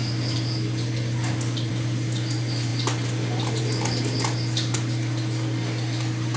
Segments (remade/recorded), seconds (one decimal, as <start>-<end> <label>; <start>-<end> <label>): 0.0-6.4 recorded